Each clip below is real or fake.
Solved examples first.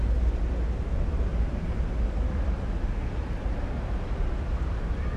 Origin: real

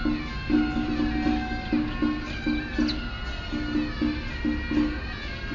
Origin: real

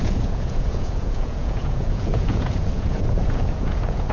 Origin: fake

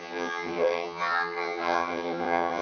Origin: fake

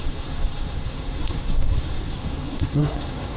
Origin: fake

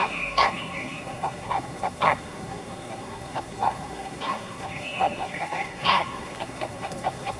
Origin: fake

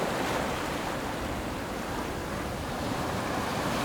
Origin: fake